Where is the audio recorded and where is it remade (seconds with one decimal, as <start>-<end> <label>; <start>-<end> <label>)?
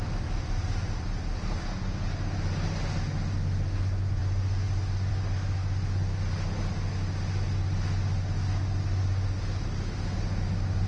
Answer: 0.0-10.9 recorded